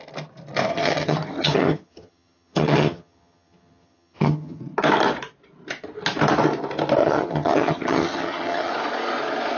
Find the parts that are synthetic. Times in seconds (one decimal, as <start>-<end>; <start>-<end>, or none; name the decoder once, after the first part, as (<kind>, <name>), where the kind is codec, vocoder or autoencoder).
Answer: 0.7-4.6 (vocoder, HiFi-GAN); 7.0-8.7

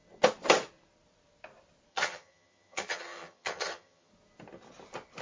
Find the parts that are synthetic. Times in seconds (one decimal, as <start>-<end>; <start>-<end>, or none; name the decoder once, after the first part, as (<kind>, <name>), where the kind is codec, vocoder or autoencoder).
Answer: 1.9-4.1 (vocoder, HiFi-GAN)

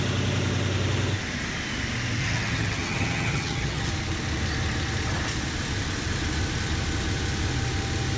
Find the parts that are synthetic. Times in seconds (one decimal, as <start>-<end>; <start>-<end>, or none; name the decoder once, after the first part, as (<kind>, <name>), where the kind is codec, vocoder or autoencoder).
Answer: 2.2-3.9 (vocoder, HiFi-GAN)

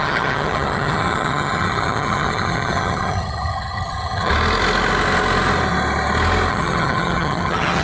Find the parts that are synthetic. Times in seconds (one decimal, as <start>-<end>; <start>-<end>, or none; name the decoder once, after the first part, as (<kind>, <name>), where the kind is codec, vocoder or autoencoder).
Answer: 0.0-4.3 (vocoder, HiFi-GAN); 6.5-7.8

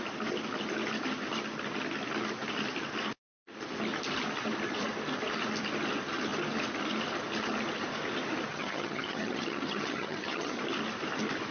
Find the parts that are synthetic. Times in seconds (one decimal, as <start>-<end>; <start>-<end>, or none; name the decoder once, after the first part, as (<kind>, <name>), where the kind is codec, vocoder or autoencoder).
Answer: 8.5-10.6 (vocoder, HiFi-GAN)

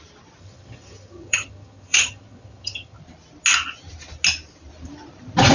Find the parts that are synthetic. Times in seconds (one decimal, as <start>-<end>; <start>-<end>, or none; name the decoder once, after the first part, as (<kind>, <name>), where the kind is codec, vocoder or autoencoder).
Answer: 0.4-3.0 (vocoder, HiFi-GAN)